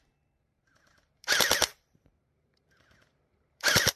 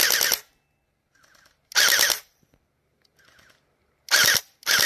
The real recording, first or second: second